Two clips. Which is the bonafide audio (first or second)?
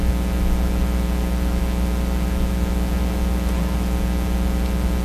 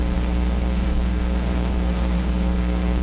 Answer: first